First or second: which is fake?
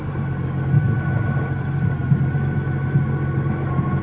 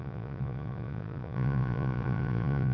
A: second